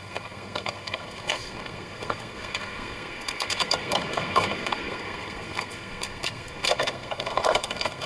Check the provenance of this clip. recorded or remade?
remade